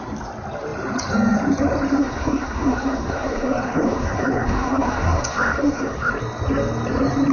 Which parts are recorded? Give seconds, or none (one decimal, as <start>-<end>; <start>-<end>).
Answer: 0.0-2.0; 6.1-7.3